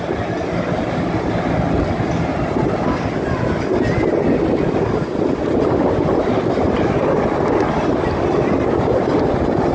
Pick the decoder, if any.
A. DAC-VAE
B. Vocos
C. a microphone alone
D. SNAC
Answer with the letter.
C